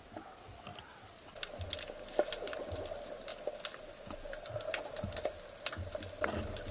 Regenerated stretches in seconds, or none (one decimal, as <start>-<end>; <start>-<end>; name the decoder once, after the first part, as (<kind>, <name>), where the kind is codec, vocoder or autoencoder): none